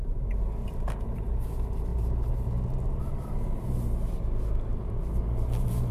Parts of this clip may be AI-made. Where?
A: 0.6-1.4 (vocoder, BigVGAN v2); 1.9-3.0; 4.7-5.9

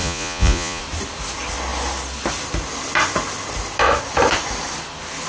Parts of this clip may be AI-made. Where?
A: 0.0-0.8 (vocoder, Vocos)

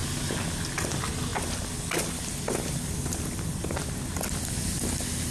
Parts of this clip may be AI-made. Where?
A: none